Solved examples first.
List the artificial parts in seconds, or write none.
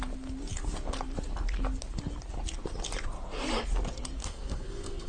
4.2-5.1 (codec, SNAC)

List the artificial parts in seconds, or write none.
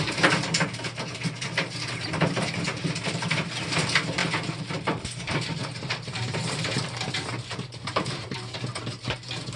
0.0-9.6 (vocoder, BigVGAN v2)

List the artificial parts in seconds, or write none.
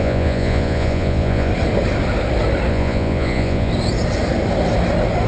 0.0-1.5 (vocoder, Vocos); 2.7-3.7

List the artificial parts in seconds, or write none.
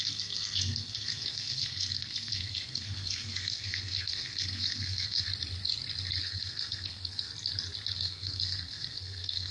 0.0-5.3 (codec, SNAC); 6.2-7.3; 7.9-9.5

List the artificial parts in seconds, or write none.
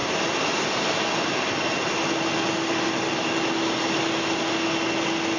none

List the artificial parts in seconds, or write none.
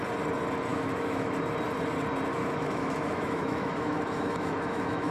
0.7-1.3 (autoencoder, DAC-VAE); 2.3-5.1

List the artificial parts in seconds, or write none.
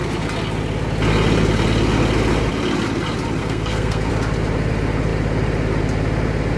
3.4-4.1 (codec, SNAC)